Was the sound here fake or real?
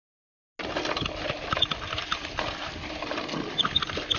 real